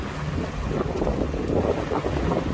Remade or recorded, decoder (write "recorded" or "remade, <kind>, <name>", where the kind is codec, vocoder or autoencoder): recorded